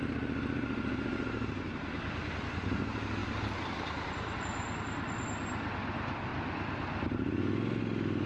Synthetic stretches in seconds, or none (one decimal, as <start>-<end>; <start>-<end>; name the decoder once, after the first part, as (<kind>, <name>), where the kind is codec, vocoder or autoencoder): none

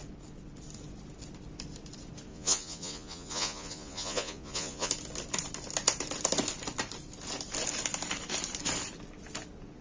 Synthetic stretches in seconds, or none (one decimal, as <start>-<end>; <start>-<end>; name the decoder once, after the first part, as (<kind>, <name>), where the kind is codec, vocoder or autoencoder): 2.3-4.9 (vocoder, Vocos)